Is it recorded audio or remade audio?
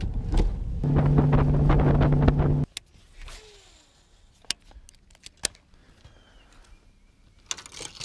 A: recorded